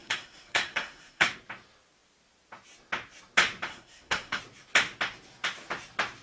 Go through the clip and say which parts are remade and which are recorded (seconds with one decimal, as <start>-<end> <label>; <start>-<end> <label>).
0.0-1.3 remade; 1.3-3.7 recorded; 3.7-4.4 remade; 4.4-6.2 recorded